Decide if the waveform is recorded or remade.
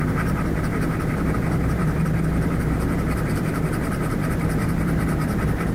remade